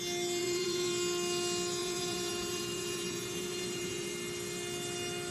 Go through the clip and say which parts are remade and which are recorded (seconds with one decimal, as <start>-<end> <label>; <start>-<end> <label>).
0.0-0.4 recorded; 0.4-0.9 remade; 0.9-1.8 recorded; 1.8-4.1 remade; 4.1-5.3 recorded